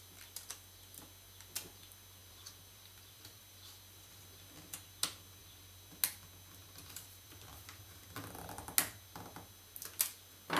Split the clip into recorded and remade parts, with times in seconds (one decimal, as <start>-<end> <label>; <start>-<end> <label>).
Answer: 0.0-2.2 recorded; 2.2-4.2 remade; 4.2-5.4 recorded; 5.4-5.9 remade; 5.9-6.6 recorded; 6.6-7.5 remade; 7.5-10.6 recorded